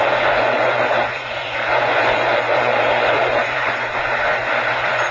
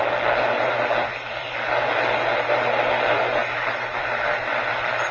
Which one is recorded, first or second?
second